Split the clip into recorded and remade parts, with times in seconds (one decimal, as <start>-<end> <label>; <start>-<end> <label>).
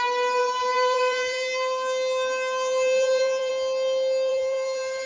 0.0-0.4 recorded; 0.4-3.5 remade; 3.5-4.3 recorded; 4.3-5.1 remade